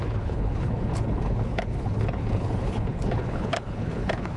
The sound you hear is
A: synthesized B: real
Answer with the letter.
A